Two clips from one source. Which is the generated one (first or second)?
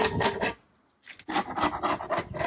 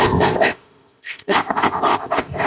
second